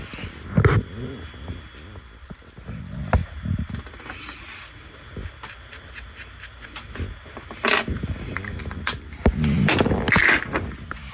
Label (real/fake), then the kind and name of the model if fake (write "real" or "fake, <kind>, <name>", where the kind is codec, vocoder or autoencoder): real